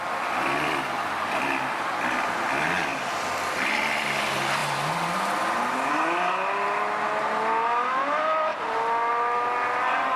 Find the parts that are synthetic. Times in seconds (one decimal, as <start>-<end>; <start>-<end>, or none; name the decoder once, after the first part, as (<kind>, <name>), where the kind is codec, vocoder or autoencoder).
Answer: none